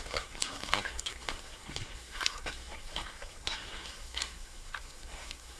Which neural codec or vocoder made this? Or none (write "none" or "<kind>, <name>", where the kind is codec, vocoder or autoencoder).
codec, SNAC